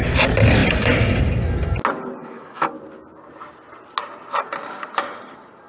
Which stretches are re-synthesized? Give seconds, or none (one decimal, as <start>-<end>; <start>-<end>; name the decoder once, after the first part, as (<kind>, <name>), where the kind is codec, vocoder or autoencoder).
2.2-2.7 (autoencoder, DAC-VAE)